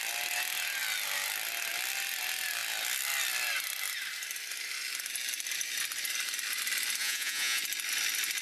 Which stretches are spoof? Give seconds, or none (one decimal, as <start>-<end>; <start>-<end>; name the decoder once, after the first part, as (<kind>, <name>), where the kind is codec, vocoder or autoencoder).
7.0-7.6 (vocoder, Vocos)